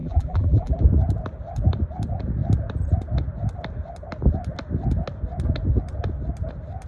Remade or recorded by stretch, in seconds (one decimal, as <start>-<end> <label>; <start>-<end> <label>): 0.0-0.8 remade; 0.8-6.9 recorded